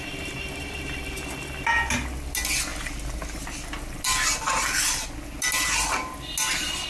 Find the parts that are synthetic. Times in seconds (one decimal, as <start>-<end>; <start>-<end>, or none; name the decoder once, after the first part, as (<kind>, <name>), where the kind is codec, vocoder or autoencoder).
none